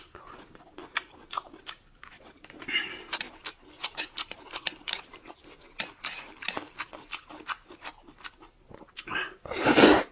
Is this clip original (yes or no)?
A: no